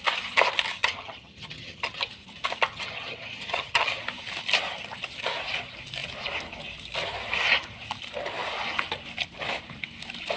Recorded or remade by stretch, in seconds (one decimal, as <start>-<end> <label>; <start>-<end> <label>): 0.0-0.8 recorded; 0.8-2.1 remade; 2.1-2.7 recorded; 2.7-4.0 remade; 4.0-10.4 recorded